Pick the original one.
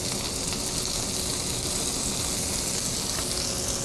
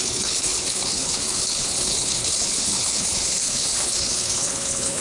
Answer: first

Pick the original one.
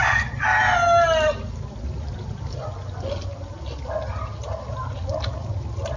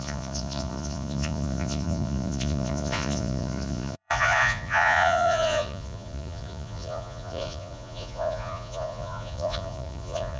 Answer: first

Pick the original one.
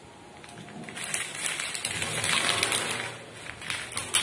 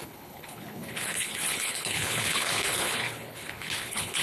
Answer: first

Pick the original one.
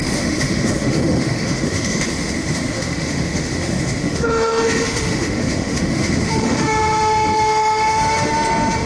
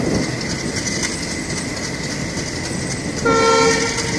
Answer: second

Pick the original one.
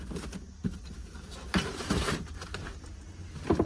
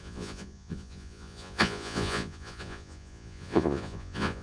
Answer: first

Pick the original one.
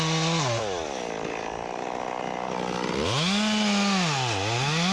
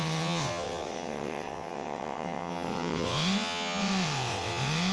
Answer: first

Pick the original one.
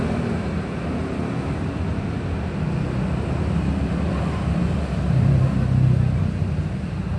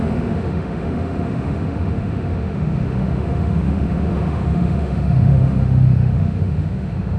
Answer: first